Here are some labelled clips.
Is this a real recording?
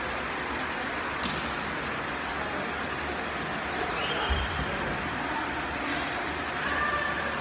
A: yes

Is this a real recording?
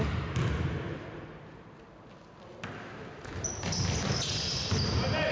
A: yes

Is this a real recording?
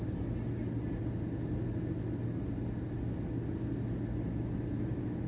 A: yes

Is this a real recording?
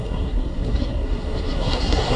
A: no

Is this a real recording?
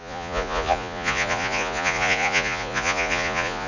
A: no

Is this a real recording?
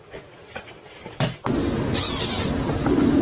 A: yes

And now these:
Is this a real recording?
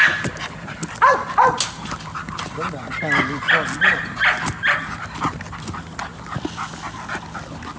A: yes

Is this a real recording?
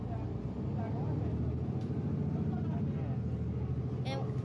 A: yes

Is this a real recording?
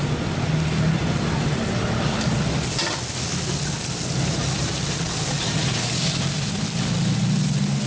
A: yes